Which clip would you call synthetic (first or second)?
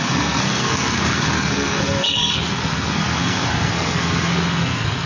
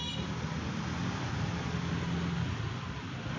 first